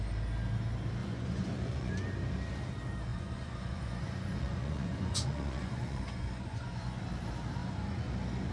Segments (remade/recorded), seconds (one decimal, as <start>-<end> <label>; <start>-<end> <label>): 0.0-1.0 recorded; 1.0-1.9 remade; 1.9-3.1 recorded; 3.1-7.0 remade; 7.0-7.6 recorded; 7.6-8.1 remade; 8.1-8.5 recorded